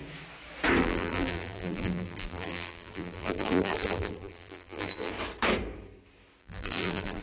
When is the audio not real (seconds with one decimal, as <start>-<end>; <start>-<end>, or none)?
0.8-5.1; 6.4-7.2